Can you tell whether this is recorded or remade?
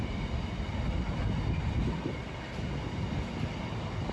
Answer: recorded